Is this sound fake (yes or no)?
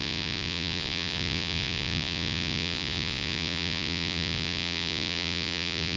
yes